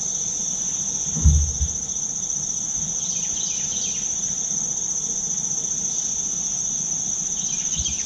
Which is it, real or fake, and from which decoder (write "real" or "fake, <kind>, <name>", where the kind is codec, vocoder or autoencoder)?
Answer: real